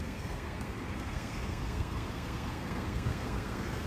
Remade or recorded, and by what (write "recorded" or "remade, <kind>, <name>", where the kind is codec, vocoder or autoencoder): remade, codec, SNAC